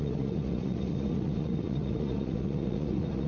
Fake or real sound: fake